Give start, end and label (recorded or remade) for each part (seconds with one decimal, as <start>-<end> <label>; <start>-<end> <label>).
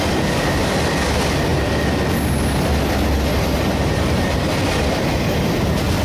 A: 0.0-6.0 recorded